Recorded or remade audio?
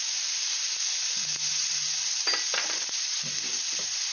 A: recorded